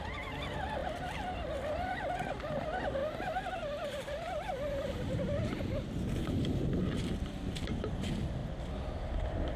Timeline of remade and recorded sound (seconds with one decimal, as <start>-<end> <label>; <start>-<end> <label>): 0.0-0.8 recorded; 0.8-2.1 remade; 2.1-3.0 recorded; 3.0-7.9 remade; 7.9-9.6 recorded